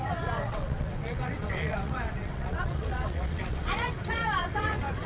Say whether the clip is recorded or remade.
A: remade